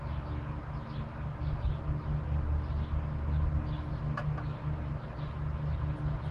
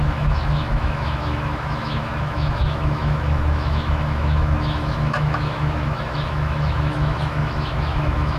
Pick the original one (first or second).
first